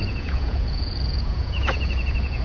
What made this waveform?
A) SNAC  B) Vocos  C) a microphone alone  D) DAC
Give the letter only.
B